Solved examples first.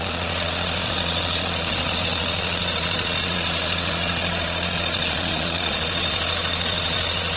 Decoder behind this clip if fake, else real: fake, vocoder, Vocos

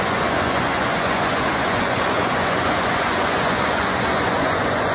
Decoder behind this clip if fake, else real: fake, vocoder, Vocos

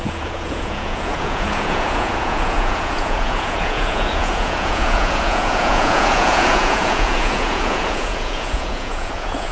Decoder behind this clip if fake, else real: fake, vocoder, Vocos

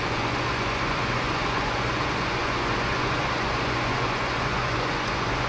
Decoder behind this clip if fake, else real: fake, vocoder, Vocos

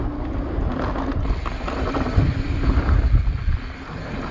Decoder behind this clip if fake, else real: real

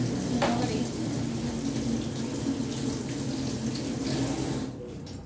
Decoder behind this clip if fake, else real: real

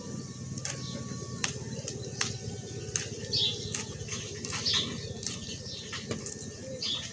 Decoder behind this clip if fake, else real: real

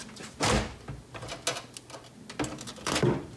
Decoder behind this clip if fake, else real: real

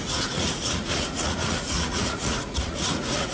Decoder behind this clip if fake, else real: fake, vocoder, Vocos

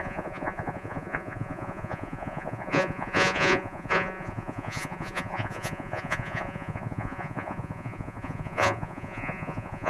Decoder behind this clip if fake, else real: fake, vocoder, Vocos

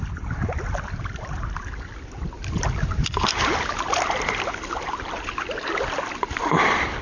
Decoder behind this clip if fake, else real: real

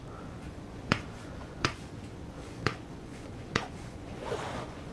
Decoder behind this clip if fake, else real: fake, vocoder, Vocos